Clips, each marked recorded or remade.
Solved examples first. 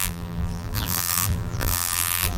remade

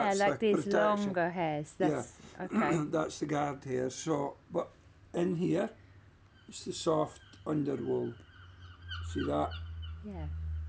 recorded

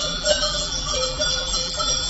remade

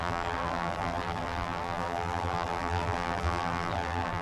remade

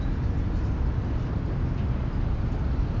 recorded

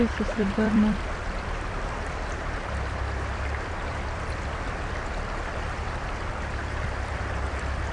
remade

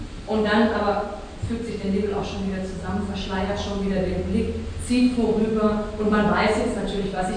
recorded